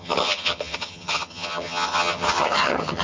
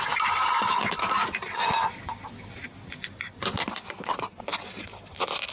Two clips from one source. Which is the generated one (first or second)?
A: first